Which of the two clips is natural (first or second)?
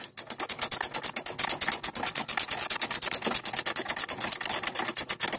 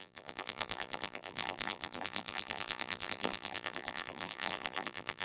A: first